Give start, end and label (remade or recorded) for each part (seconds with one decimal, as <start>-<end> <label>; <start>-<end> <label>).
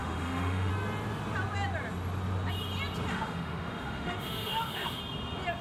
0.0-0.7 remade; 0.7-3.1 recorded; 3.1-5.0 remade; 5.0-5.6 recorded